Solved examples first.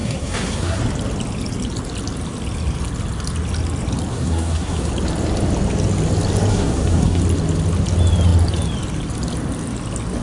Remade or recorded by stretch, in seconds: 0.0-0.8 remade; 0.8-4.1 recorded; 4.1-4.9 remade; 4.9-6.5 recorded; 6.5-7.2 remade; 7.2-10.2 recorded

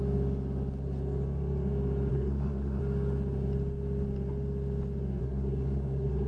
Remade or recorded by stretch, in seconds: 0.0-2.1 recorded; 2.1-2.8 remade; 2.8-5.2 recorded; 5.2-6.3 remade

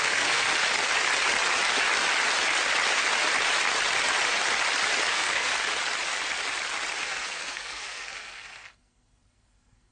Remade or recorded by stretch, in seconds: 0.0-0.5 remade; 0.5-5.1 recorded; 5.1-5.5 remade; 5.5-7.0 recorded; 7.0-9.9 remade

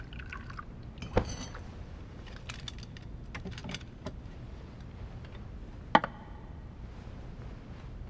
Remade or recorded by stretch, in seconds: 0.0-8.1 recorded

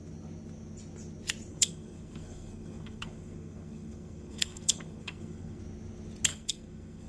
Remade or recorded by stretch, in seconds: 0.0-1.5 recorded; 1.5-5.6 remade; 5.6-6.3 recorded; 6.3-7.1 remade

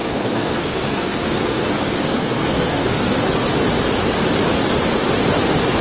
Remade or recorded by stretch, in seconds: 0.0-3.2 remade; 3.2-5.8 recorded

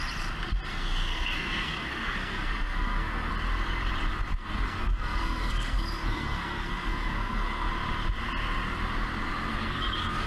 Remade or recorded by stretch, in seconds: 0.0-0.7 recorded; 0.7-3.3 remade; 3.3-4.3 recorded; 4.3-7.7 remade; 7.7-9.5 recorded; 9.5-10.3 remade

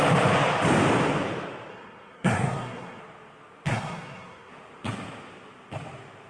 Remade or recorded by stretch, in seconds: 0.0-1.7 recorded; 1.7-3.0 remade; 3.0-3.7 recorded; 3.7-4.5 remade; 4.5-6.3 recorded